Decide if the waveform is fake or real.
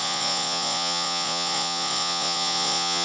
fake